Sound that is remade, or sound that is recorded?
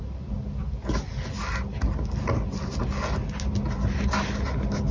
recorded